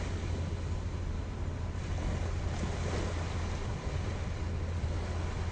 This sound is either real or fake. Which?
real